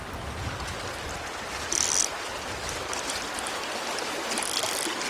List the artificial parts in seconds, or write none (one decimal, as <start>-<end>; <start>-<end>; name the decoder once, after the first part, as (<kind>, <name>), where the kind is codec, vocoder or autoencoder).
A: none